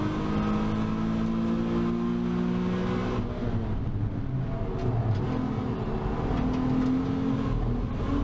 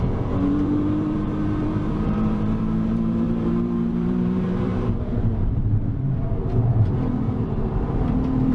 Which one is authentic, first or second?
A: first